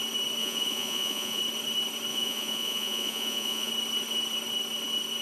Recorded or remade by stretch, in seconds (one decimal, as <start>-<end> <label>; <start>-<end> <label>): 0.0-0.4 recorded; 0.4-1.4 remade; 1.4-2.1 recorded; 2.1-3.7 remade; 3.7-5.2 recorded